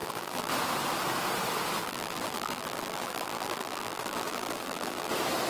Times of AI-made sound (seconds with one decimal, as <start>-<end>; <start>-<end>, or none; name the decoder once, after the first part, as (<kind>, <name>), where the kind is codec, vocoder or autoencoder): 0.0-0.5 (vocoder, BigVGAN v2); 1.8-5.1